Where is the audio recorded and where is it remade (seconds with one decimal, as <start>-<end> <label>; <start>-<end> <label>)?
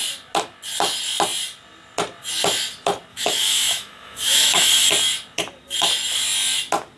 0.0-3.1 recorded; 3.1-4.9 remade; 4.9-7.0 recorded